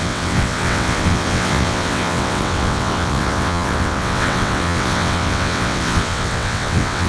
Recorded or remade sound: remade